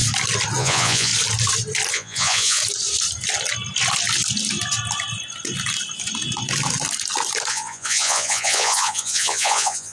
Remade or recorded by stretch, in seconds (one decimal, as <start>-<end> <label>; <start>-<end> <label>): 0.0-0.6 recorded; 0.6-1.1 remade; 1.1-1.9 recorded; 1.9-2.6 remade; 2.6-7.5 recorded; 7.5-9.9 remade